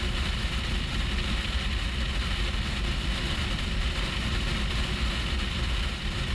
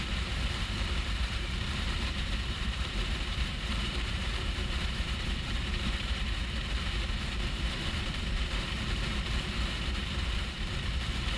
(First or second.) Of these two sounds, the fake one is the second